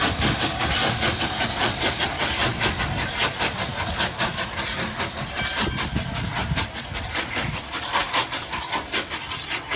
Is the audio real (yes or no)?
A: yes